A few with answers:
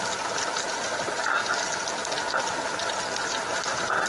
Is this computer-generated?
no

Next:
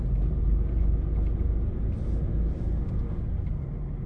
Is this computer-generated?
no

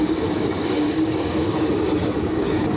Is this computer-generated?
yes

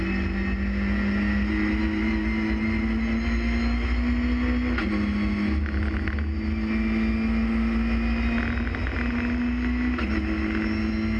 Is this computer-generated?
no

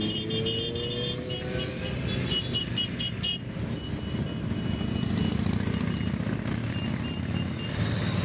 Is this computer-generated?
no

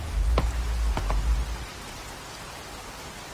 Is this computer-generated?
no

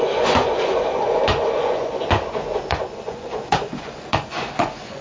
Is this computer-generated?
yes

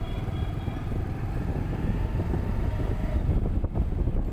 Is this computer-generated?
no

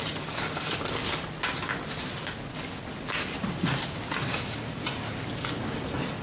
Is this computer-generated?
no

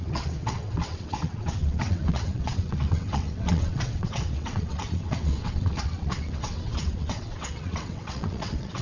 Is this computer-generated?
yes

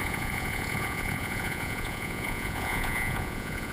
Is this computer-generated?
yes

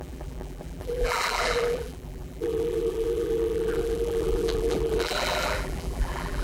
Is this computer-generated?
yes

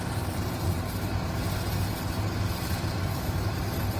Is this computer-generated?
no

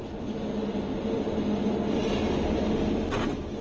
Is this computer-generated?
no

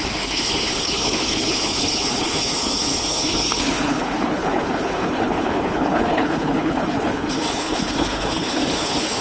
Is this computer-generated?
yes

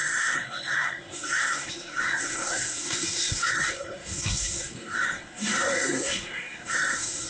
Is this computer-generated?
yes